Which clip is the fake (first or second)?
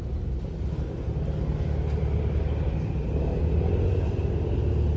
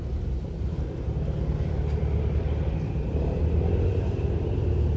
second